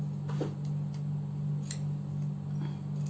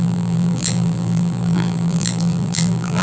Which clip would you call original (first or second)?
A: first